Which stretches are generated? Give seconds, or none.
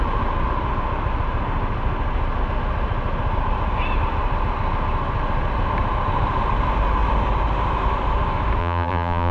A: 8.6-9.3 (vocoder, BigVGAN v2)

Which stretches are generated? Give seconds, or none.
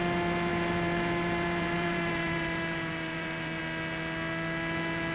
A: 0.5-3.6 (vocoder, BigVGAN v2)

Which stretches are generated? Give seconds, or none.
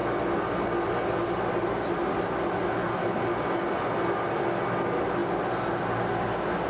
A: none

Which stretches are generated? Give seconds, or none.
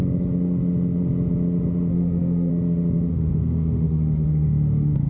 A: 1.9-2.5 (autoencoder, DAC-VAE); 3.1-5.1